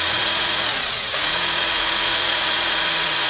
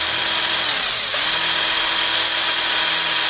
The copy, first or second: first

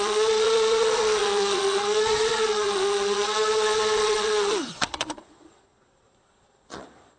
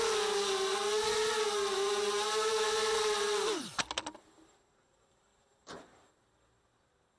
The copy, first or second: first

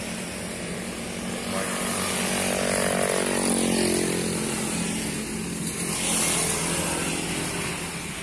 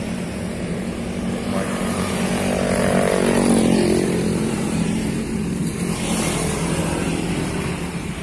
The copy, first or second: second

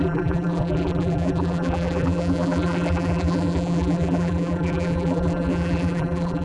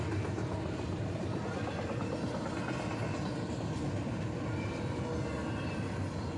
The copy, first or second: first